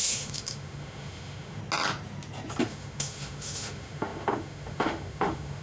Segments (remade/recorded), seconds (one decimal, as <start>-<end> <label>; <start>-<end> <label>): 0.0-1.6 remade; 1.6-2.6 recorded; 2.6-5.6 remade

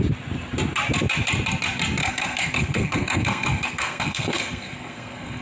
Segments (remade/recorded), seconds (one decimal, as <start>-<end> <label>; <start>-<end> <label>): 0.0-2.0 recorded; 2.0-5.4 remade

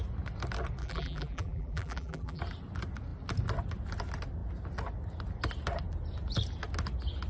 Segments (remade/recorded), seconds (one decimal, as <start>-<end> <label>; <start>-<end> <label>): 0.0-0.8 recorded; 0.8-2.4 remade; 2.4-7.3 recorded